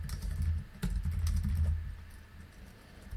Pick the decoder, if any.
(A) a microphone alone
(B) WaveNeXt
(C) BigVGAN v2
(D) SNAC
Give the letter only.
A